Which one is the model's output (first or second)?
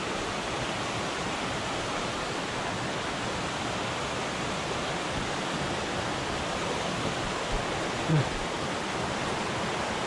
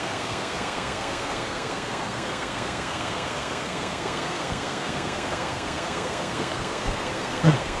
second